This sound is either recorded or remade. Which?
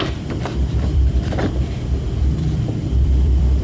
remade